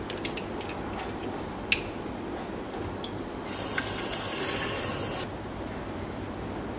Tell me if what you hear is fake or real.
real